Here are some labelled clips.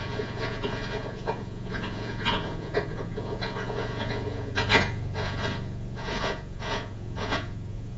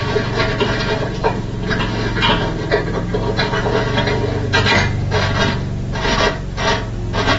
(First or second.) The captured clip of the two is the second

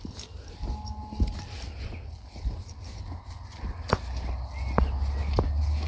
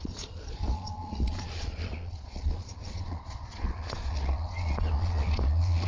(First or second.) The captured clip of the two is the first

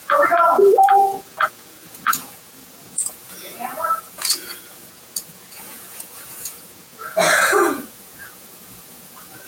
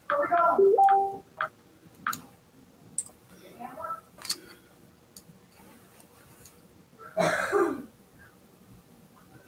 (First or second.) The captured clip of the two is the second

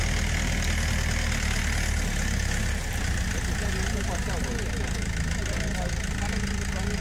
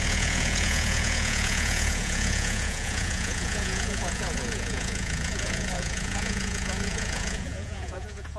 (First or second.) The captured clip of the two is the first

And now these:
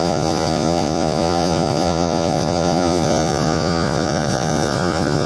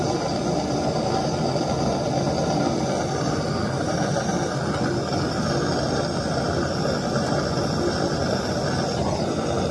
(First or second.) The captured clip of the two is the second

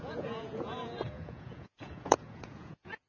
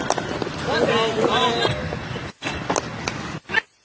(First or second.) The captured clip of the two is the second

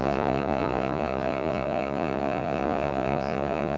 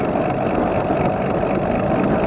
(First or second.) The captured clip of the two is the second